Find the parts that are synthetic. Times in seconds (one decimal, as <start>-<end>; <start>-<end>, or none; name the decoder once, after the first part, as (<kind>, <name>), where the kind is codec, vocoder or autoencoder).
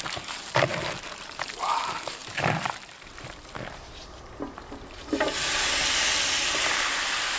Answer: 0.0-5.0 (vocoder, BigVGAN v2); 6.7-7.4